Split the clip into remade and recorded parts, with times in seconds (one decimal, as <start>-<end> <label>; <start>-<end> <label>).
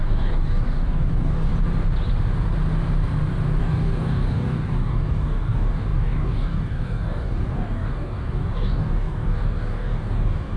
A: 0.0-1.5 remade; 1.5-3.6 recorded; 3.6-10.6 remade